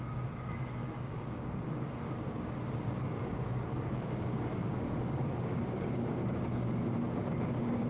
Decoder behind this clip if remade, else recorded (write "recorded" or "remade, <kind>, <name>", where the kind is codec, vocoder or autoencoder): remade, codec, DAC